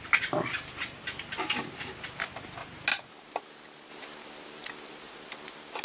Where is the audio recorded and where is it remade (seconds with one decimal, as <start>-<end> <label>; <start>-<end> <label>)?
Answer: 0.0-5.8 recorded